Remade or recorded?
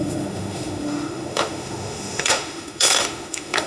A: remade